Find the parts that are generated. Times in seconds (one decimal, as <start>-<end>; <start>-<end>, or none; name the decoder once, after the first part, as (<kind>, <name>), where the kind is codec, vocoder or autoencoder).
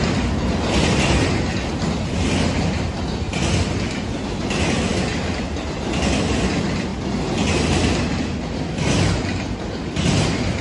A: none